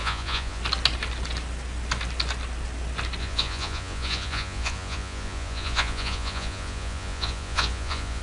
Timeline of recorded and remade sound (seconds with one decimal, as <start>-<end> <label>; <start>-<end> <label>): 0.0-0.6 remade; 0.6-3.2 recorded; 3.2-8.2 remade